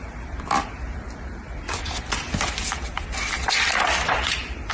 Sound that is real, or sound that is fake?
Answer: fake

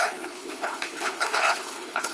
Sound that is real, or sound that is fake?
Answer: fake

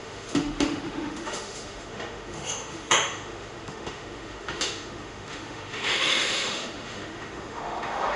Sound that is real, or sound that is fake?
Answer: fake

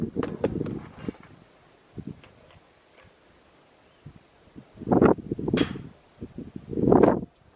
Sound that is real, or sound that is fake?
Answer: real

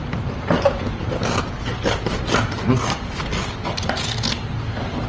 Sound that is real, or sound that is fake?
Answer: real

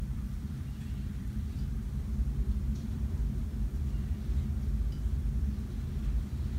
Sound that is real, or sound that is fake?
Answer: fake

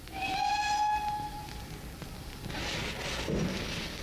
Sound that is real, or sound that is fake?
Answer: real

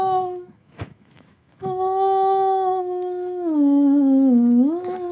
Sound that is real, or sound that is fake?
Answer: fake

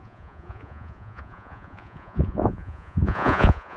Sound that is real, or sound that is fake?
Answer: fake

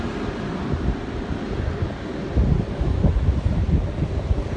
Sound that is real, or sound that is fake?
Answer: real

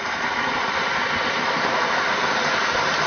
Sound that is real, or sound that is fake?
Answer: real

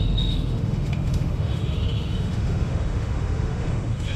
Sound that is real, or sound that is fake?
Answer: fake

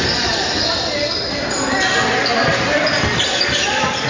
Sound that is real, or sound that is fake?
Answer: real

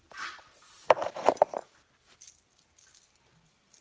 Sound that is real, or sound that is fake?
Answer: real